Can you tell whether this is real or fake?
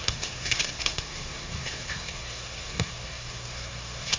fake